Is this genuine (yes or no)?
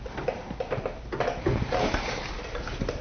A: yes